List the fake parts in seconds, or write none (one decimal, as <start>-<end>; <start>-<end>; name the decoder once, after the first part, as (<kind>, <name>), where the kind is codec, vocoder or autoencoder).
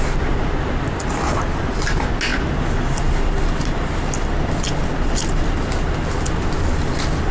none